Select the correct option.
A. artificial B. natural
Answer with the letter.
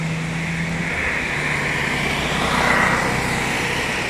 B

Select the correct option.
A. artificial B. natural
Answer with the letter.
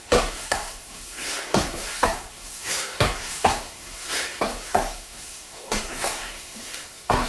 A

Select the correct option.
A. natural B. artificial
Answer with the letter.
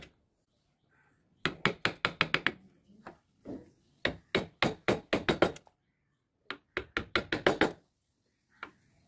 A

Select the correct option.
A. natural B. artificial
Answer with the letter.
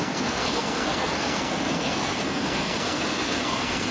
B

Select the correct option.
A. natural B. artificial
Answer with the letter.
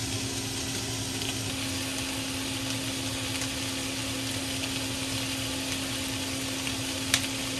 A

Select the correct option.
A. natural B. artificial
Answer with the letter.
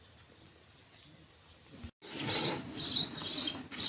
A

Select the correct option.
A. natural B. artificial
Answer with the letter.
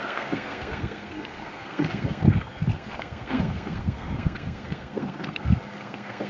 B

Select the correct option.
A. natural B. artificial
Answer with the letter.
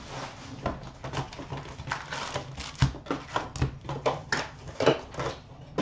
A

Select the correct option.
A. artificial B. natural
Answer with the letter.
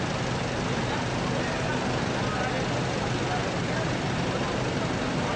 B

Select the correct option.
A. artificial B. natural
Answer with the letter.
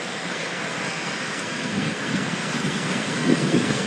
A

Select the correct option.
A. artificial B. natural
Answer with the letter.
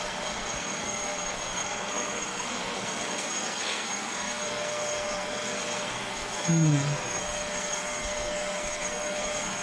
A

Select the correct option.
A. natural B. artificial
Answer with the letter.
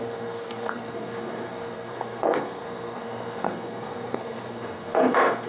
B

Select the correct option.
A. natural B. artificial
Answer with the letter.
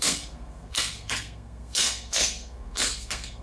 B